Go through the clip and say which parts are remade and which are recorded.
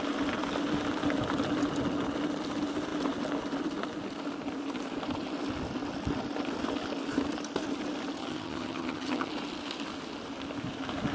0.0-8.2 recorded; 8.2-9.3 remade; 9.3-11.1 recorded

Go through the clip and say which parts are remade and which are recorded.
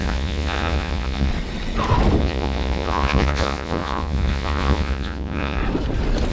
0.0-1.3 remade; 1.3-2.2 recorded; 2.2-5.6 remade; 5.6-6.3 recorded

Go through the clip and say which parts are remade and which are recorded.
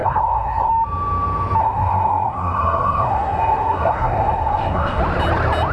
0.0-0.7 remade; 0.7-1.6 recorded; 1.6-5.0 remade; 5.0-5.7 recorded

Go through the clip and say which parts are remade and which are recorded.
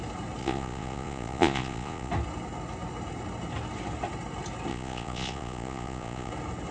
0.0-0.4 recorded; 0.4-2.1 remade; 2.1-4.7 recorded; 4.7-6.3 remade; 6.3-6.7 recorded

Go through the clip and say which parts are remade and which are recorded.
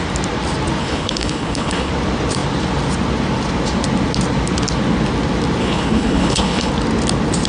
0.0-0.8 recorded; 0.8-1.9 remade; 1.9-5.6 recorded; 5.6-6.7 remade; 6.7-7.5 recorded